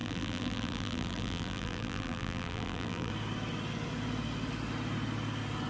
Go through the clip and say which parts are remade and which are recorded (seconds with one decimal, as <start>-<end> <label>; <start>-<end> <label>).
0.0-3.1 remade; 3.1-5.7 recorded

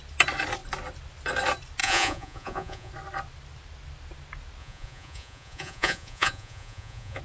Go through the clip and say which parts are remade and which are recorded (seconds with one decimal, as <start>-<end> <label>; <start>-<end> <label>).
0.0-1.8 recorded; 1.8-2.9 remade; 2.9-4.6 recorded; 4.6-7.2 remade

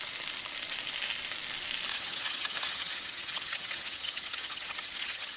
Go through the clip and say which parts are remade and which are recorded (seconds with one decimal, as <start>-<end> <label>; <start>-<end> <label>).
0.0-1.9 recorded; 1.9-5.4 remade

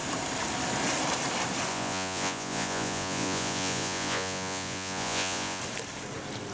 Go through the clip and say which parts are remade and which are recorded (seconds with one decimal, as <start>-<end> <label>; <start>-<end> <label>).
0.0-1.7 recorded; 1.7-5.6 remade; 5.6-6.5 recorded

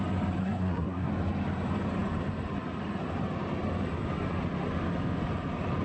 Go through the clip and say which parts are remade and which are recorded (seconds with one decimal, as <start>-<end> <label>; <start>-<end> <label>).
0.0-0.4 recorded; 0.4-1.1 remade; 1.1-5.8 recorded